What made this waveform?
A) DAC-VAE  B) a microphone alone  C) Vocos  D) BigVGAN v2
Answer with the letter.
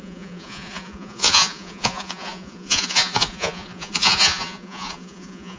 C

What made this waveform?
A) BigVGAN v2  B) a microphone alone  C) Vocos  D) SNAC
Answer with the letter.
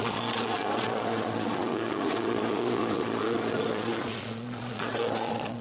C